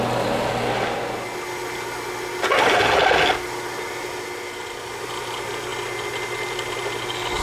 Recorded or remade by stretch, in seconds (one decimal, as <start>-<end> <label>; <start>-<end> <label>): 0.0-7.4 recorded